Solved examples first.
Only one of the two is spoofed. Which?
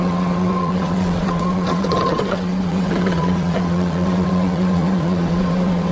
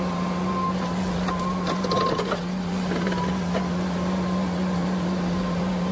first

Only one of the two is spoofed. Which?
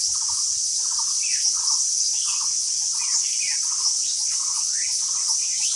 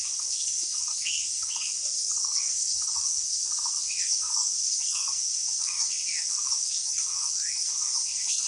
second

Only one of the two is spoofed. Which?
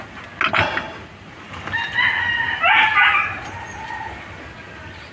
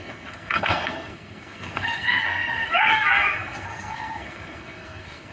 second